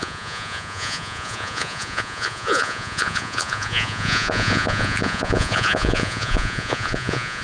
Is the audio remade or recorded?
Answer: remade